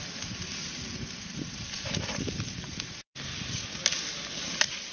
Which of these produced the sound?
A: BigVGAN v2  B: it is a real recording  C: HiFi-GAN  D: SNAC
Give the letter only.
A